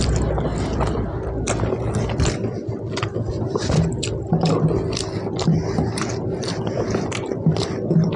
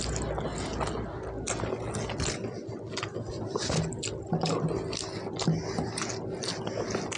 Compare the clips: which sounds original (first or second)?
second